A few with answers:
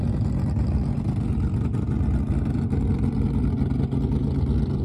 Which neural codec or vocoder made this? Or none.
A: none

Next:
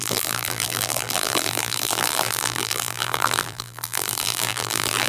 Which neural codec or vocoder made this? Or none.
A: vocoder, BigVGAN v2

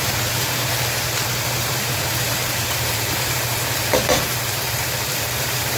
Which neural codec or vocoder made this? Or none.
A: vocoder, BigVGAN v2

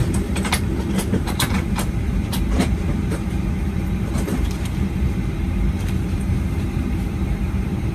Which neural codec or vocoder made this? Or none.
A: vocoder, BigVGAN v2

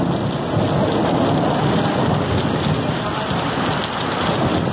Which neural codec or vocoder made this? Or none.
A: none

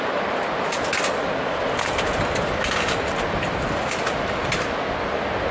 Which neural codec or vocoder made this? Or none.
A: none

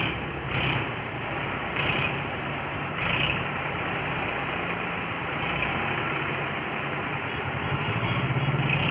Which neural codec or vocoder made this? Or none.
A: vocoder, BigVGAN v2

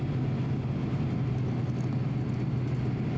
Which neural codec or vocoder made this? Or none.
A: none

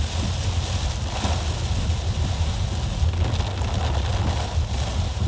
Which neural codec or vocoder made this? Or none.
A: none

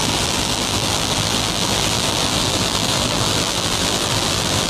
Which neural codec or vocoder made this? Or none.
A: vocoder, BigVGAN v2